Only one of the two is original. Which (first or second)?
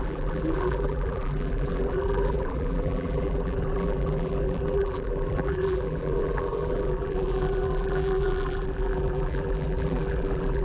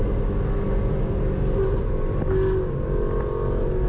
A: second